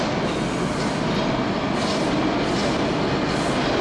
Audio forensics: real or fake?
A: real